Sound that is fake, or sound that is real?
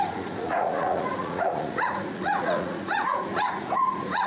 fake